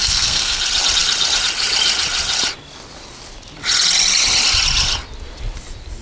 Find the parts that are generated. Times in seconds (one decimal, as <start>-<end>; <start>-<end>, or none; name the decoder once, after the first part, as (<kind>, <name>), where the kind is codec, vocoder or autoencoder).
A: 0.0-0.6 (codec, SNAC)